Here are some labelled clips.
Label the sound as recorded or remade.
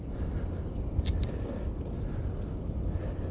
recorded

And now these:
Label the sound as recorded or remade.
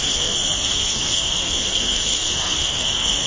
remade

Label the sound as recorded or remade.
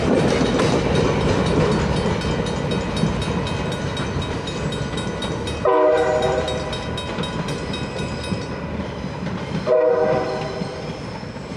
recorded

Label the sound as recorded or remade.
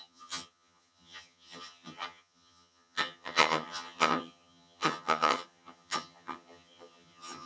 remade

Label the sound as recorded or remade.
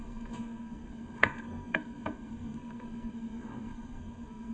remade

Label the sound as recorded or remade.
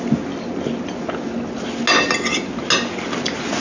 recorded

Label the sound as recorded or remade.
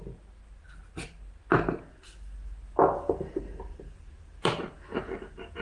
recorded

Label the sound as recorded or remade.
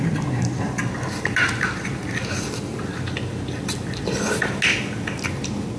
recorded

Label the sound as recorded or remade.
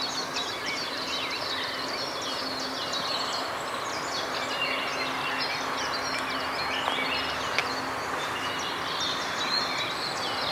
recorded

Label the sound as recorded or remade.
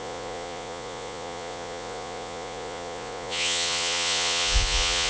remade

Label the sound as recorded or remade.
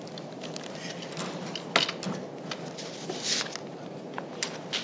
recorded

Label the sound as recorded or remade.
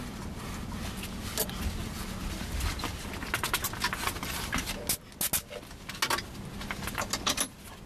recorded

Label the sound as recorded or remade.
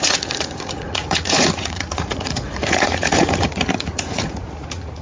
remade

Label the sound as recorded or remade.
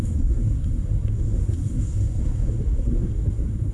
remade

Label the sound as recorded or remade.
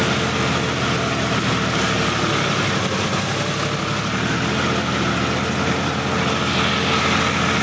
recorded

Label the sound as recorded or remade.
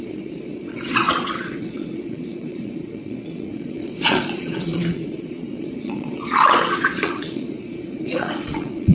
remade